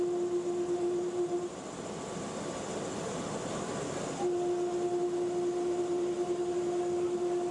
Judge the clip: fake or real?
real